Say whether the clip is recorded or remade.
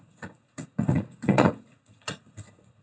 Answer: remade